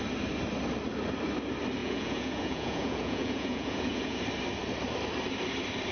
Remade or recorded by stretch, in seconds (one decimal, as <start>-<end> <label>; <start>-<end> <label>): 0.0-1.8 recorded; 1.8-4.2 remade; 4.2-5.9 recorded